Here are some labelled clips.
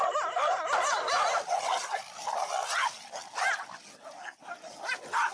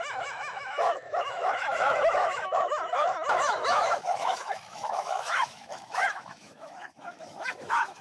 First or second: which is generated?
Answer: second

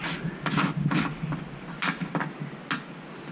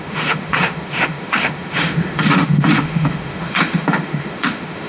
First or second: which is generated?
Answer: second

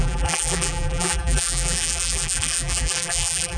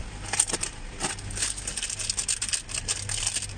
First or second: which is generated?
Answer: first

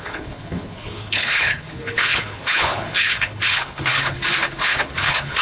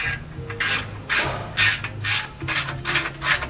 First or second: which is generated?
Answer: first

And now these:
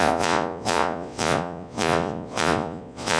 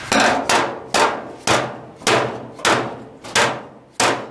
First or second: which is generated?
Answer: first